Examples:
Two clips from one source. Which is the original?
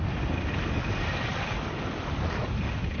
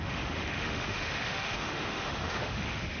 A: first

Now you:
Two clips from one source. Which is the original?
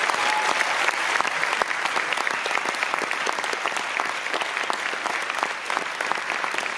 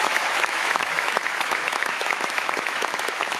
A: first